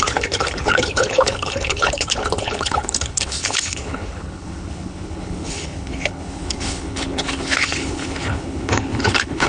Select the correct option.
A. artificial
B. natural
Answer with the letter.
A